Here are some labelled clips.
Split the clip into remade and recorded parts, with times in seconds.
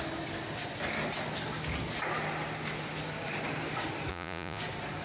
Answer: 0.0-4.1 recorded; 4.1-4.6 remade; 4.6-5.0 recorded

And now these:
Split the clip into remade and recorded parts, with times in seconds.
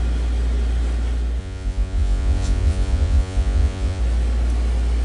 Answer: 0.0-1.4 recorded; 1.4-4.0 remade; 4.0-5.0 recorded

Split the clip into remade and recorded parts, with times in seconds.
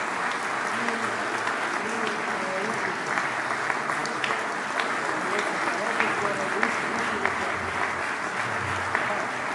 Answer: 0.0-9.5 recorded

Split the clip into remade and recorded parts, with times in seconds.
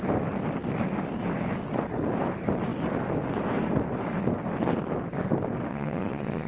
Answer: 0.0-5.7 recorded; 5.7-6.5 remade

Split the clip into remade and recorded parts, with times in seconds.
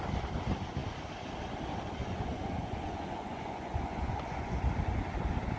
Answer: 0.0-2.0 recorded; 2.0-4.6 remade; 4.6-5.6 recorded